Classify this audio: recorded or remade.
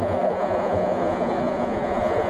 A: remade